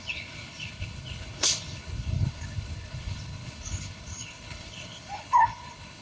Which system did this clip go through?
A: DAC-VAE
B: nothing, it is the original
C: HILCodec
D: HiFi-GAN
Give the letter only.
C